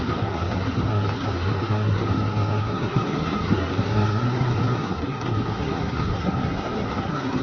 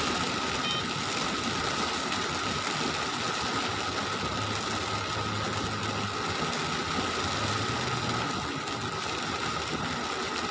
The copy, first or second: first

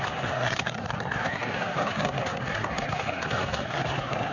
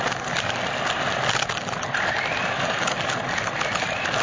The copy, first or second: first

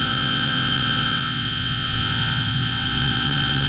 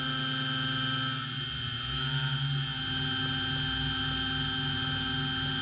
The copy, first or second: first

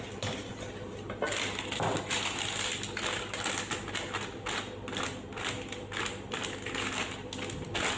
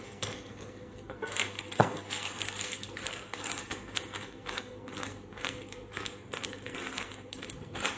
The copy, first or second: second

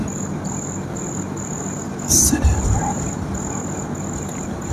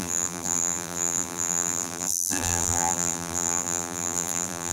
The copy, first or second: second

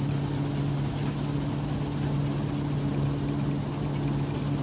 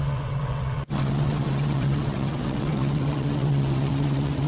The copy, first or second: second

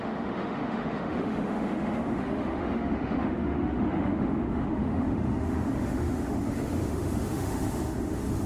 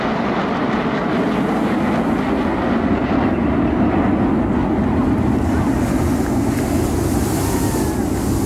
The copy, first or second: first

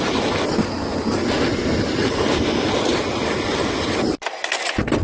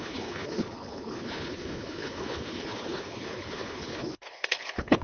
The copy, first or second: second